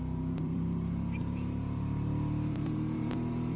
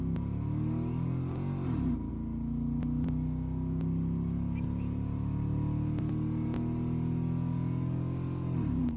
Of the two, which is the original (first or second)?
second